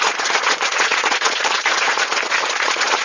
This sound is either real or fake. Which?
fake